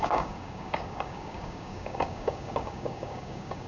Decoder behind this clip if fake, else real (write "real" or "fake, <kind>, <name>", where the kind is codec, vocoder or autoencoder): fake, codec, DAC